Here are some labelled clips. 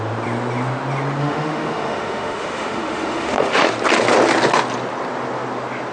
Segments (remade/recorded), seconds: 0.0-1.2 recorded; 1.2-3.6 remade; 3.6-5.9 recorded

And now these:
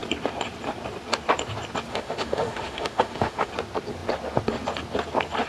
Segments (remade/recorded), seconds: 0.0-1.9 recorded; 1.9-3.5 remade; 3.5-5.5 recorded

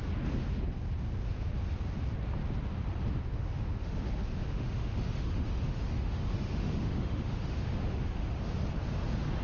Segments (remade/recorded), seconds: 0.0-3.3 recorded; 3.3-8.4 remade; 8.4-9.4 recorded

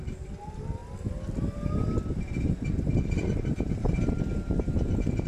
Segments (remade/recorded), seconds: 0.0-5.3 recorded

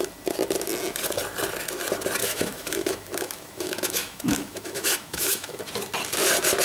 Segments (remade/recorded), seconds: 0.0-2.2 recorded; 2.2-5.6 remade; 5.6-6.6 recorded

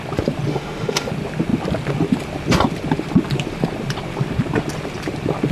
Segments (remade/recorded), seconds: 0.0-0.5 recorded; 0.5-1.1 remade; 1.1-5.5 recorded

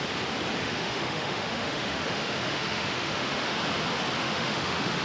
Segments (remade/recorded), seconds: 0.0-0.6 recorded; 0.6-3.6 remade; 3.6-4.2 recorded; 4.2-5.0 remade

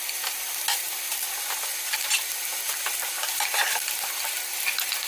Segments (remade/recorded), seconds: 0.0-5.1 recorded